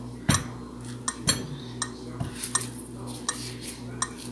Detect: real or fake real